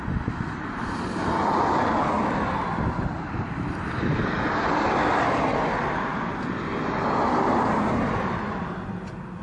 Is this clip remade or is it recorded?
recorded